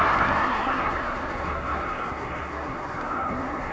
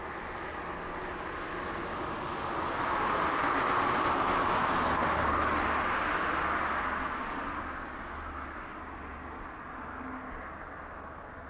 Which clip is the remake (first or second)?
first